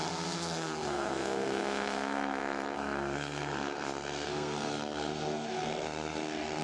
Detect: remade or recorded remade